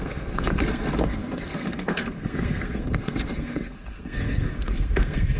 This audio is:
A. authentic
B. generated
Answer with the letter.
B